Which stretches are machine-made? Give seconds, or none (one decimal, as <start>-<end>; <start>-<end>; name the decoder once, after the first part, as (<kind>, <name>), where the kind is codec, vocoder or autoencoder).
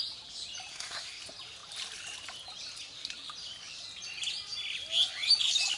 0.7-1.2 (codec, SNAC)